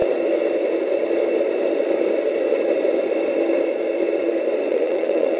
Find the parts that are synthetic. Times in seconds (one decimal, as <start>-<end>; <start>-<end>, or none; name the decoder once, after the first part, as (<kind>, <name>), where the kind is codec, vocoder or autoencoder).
4.7-5.4 (vocoder, Vocos)